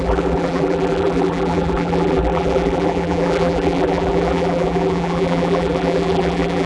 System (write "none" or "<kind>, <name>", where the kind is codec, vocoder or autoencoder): vocoder, BigVGAN v2